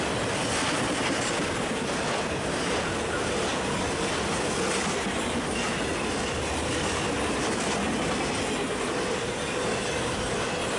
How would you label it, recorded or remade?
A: recorded